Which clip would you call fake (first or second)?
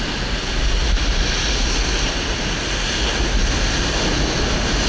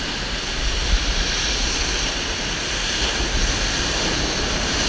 second